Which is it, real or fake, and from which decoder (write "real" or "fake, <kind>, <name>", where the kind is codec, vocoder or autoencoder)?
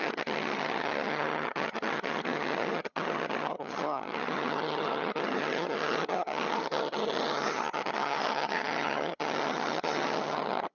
fake, vocoder, HiFi-GAN